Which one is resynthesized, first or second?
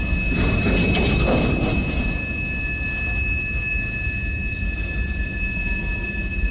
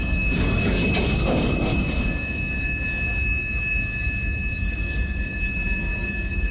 second